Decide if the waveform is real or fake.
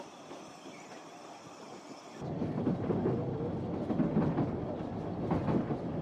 real